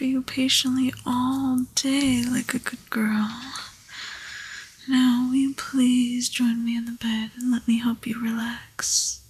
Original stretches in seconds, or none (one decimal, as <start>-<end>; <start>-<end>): 0.0-6.6; 7.8-8.4